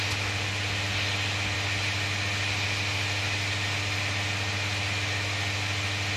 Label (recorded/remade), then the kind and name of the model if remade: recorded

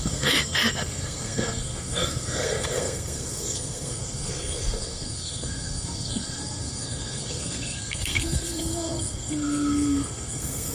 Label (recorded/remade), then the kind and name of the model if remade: remade, codec, SNAC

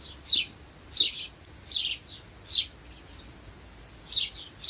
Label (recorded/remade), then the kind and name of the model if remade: recorded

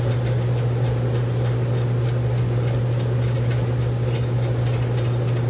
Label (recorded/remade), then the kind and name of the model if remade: recorded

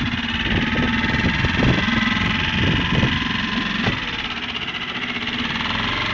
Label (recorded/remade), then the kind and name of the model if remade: recorded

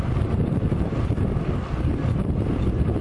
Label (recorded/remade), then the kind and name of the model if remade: recorded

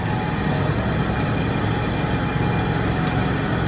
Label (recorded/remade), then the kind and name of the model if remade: recorded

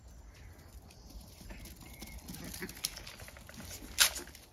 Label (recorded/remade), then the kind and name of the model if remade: recorded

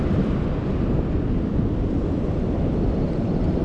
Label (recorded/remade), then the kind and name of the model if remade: recorded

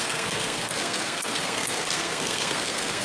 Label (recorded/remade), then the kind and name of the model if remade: remade, codec, SNAC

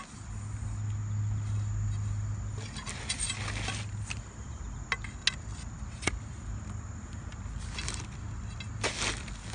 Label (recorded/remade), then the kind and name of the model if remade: recorded